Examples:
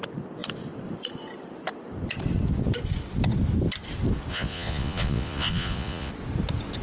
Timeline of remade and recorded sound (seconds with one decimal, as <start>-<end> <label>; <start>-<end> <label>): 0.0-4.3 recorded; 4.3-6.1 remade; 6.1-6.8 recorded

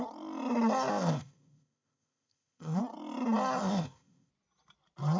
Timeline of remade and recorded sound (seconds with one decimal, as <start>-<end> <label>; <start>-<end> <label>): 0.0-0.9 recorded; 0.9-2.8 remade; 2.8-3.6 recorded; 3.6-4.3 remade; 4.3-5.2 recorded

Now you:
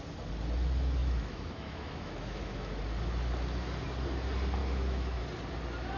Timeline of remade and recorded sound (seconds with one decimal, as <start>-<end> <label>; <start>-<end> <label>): 0.0-1.0 recorded; 1.0-2.8 remade; 2.8-4.6 recorded; 4.6-5.2 remade; 5.2-6.0 recorded